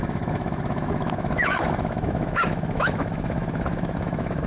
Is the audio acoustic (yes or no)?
no